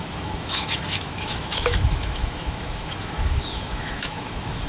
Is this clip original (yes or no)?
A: no